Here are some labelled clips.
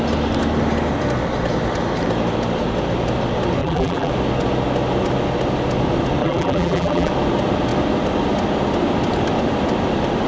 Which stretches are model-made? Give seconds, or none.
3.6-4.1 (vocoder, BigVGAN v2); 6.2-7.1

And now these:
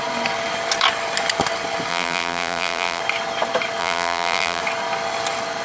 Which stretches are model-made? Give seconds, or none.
1.9-3.0 (vocoder, BigVGAN v2); 3.8-4.6

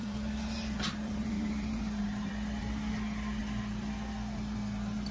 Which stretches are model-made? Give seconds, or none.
0.0-2.3 (vocoder, BigVGAN v2)

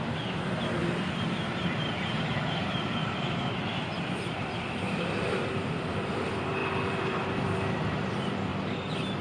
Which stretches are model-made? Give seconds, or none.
0.0-6.6 (vocoder, BigVGAN v2); 7.9-8.5

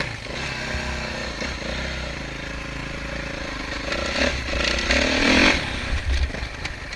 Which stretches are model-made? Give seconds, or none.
1.2-2.2 (vocoder, BigVGAN v2); 2.8-3.9; 5.4-6.4

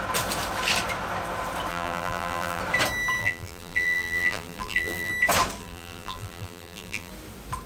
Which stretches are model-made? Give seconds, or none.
1.7-2.6 (vocoder, BigVGAN v2); 3.2-5.1; 5.6-7.1

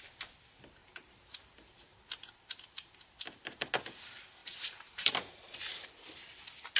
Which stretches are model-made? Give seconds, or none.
0.8-1.4 (vocoder, BigVGAN v2); 4.4-5.1